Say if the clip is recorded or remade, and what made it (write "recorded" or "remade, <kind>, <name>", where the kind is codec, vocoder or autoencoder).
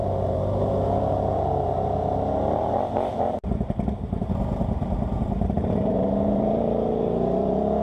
remade, vocoder, BigVGAN v2